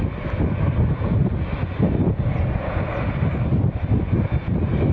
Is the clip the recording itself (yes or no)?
yes